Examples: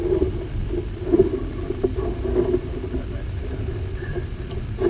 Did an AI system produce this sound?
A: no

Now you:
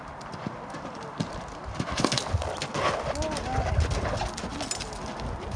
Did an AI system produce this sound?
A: no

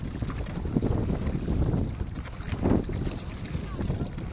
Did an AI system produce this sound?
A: no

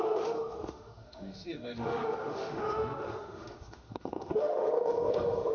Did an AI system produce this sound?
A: yes